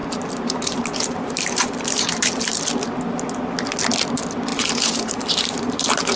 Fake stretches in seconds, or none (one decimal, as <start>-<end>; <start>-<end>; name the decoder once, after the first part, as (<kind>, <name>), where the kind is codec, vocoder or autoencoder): 0.0-2.6 (vocoder, BigVGAN v2); 4.5-6.2